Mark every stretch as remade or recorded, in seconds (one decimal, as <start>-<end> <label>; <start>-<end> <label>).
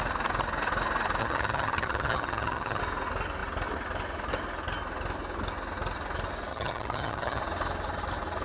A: 0.0-1.2 recorded; 1.2-2.8 remade; 2.8-6.5 recorded; 6.5-7.4 remade; 7.4-8.4 recorded